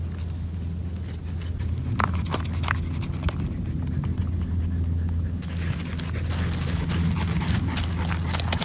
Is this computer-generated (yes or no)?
no